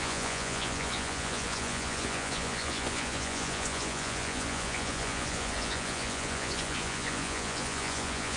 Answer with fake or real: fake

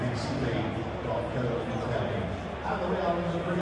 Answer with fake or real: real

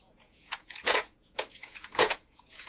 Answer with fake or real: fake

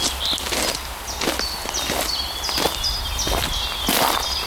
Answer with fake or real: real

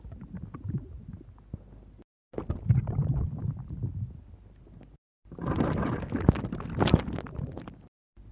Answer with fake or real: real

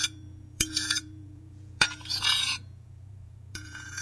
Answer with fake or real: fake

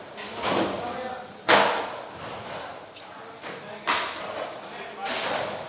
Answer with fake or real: real